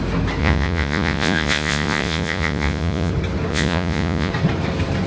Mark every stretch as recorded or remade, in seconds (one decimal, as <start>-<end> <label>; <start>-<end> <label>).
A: 0.0-0.4 recorded; 0.4-3.1 remade; 3.1-3.5 recorded; 3.5-4.3 remade; 4.3-5.1 recorded